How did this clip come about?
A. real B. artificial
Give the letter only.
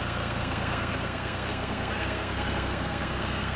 B